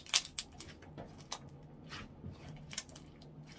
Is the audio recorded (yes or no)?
yes